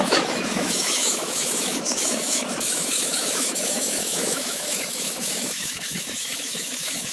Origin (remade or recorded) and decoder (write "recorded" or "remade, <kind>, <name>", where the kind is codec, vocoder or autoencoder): remade, autoencoder, DAC-VAE